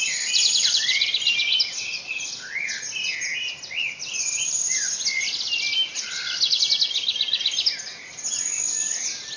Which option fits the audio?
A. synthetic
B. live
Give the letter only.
B